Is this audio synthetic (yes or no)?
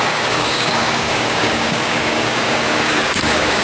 yes